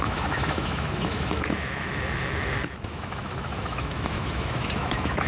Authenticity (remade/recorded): remade